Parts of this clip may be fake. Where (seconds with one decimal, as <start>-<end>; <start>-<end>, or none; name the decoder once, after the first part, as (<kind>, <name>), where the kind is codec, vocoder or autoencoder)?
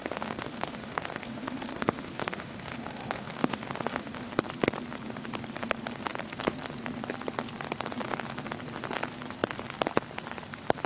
0.0-4.3 (autoencoder, DAC-VAE)